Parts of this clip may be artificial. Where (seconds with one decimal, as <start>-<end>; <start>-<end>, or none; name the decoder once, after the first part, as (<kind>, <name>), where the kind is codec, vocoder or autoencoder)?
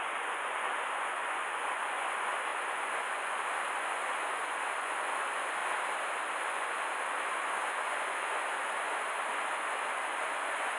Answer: 0.0-5.6 (vocoder, Vocos); 6.4-10.8